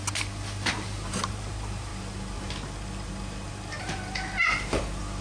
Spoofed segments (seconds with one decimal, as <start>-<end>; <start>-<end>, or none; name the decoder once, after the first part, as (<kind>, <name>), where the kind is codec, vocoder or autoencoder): 0.7-1.9 (vocoder, BigVGAN v2)